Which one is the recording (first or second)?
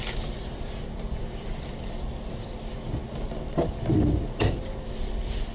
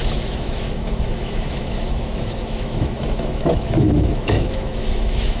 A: first